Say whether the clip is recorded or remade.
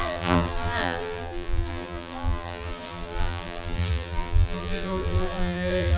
remade